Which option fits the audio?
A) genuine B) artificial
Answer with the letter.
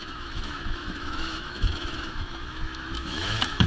B